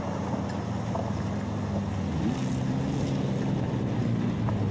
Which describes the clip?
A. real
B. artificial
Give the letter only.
A